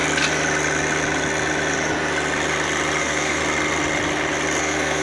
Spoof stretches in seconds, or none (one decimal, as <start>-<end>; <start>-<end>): 3.0-3.4; 4.6-5.0